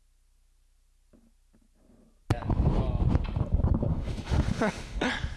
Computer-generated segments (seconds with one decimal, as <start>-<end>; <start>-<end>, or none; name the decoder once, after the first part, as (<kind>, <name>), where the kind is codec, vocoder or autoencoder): 3.9-5.0 (autoencoder, DAC-VAE)